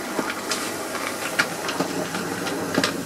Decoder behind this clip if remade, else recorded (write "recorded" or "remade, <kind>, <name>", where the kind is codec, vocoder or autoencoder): recorded